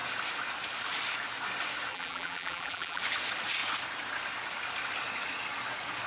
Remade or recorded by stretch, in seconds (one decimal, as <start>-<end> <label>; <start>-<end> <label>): 0.0-1.9 recorded; 1.9-3.0 remade; 3.0-6.1 recorded